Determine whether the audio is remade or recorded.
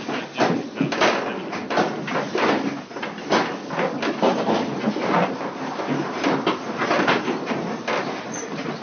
recorded